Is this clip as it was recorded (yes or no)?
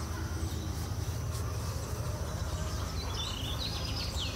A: yes